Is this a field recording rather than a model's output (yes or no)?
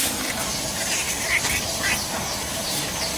yes